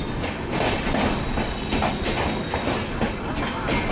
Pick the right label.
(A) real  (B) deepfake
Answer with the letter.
A